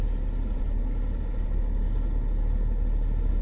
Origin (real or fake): real